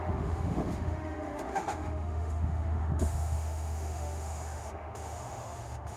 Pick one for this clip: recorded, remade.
remade